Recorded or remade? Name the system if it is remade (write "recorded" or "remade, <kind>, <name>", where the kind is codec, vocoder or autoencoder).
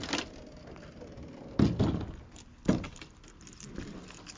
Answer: recorded